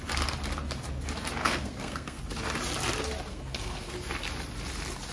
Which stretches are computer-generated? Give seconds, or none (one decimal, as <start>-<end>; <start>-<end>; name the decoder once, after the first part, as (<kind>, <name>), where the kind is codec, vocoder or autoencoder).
1.4-2.2 (codec, SNAC); 3.3-3.9